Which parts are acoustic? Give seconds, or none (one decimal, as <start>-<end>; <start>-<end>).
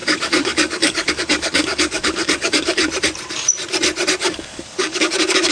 2.8-4.2